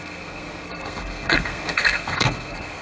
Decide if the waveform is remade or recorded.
remade